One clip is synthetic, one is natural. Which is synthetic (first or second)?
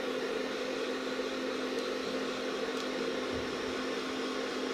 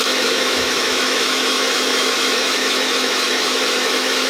second